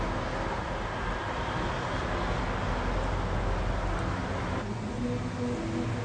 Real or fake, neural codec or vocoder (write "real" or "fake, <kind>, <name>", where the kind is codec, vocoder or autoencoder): real